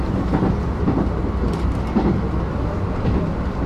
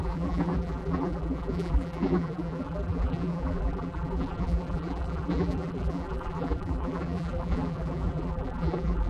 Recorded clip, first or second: first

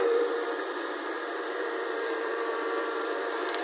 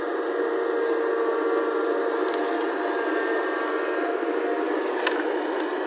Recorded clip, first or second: second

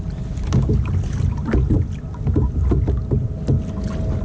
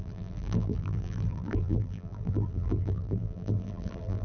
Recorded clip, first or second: first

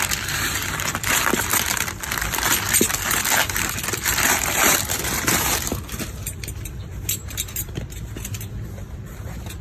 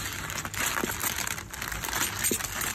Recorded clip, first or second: second